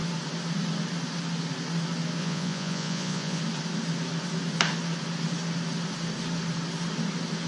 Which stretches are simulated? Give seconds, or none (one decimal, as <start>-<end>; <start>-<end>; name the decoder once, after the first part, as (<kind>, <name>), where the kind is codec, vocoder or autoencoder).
2.2-3.4 (vocoder, Vocos)